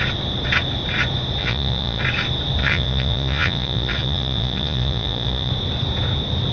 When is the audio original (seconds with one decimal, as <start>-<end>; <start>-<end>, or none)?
0.0-1.4; 2.0-2.6; 5.5-6.5